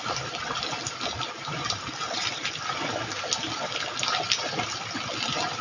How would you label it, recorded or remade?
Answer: recorded